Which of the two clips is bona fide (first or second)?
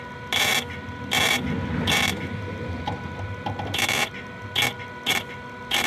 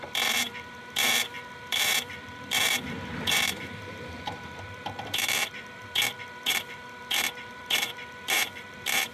first